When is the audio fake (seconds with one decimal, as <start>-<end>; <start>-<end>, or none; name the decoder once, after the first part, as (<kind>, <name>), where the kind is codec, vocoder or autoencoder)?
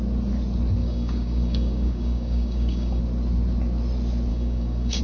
0.8-3.0 (codec, DAC); 4.3-5.0